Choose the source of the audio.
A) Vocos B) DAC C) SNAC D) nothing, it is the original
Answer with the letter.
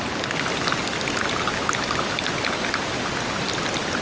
D